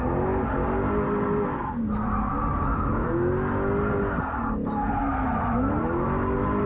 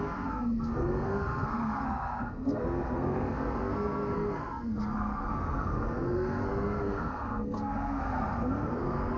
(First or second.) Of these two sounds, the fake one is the second